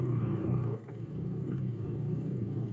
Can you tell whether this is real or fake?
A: fake